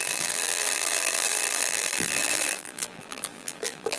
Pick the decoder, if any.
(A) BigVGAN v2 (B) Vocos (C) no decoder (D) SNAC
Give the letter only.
A